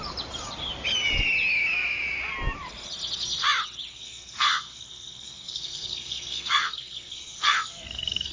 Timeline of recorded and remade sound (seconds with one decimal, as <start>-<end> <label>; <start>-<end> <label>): 0.0-3.9 recorded; 3.9-8.3 remade